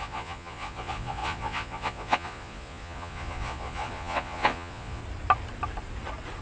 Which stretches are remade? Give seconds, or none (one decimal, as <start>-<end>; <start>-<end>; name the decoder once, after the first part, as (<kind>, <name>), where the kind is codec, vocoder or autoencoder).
0.0-5.0 (vocoder, Vocos)

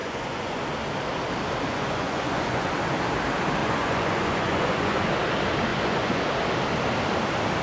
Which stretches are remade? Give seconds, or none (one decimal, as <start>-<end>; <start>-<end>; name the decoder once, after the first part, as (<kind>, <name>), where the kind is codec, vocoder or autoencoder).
0.0-0.6 (vocoder, Vocos); 1.7-2.7; 3.6-5.1; 5.7-6.2

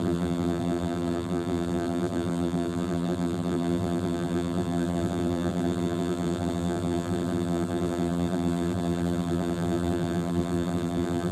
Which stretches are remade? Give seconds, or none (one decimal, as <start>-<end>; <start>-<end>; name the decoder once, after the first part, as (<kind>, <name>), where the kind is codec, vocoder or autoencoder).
0.0-11.3 (vocoder, BigVGAN v2)

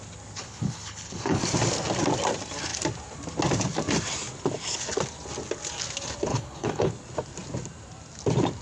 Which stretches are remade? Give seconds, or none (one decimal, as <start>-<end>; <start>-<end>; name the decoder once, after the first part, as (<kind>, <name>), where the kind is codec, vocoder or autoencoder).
0.4-1.4 (codec, HILCodec); 6.3-6.9

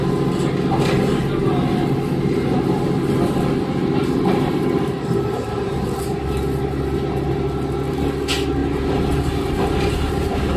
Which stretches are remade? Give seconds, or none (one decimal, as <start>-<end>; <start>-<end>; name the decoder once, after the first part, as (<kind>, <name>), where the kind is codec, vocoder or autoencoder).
none

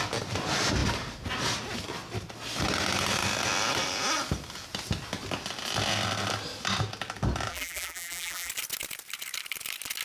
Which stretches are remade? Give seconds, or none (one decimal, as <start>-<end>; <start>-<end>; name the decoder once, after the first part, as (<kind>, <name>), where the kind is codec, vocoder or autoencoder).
7.5-8.5 (vocoder, BigVGAN v2)

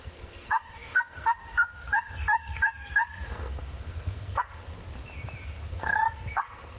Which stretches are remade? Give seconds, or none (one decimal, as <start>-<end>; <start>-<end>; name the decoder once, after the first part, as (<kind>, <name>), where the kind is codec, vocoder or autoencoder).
0.0-4.8 (codec, SNAC); 5.7-6.8